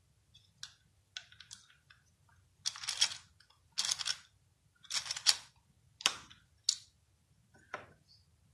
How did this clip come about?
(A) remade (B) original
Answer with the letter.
B